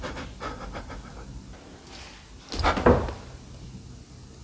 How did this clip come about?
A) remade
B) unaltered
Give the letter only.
B